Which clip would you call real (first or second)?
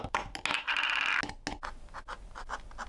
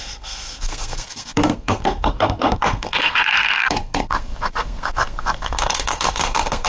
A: first